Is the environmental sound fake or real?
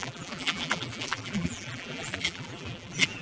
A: fake